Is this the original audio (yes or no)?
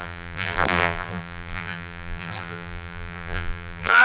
no